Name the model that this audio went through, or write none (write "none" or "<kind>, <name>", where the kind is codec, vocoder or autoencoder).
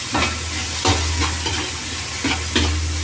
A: none